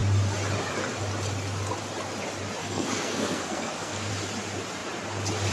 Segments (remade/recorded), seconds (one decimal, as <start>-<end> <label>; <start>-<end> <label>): 0.0-2.6 recorded; 2.6-4.1 remade; 4.1-5.5 recorded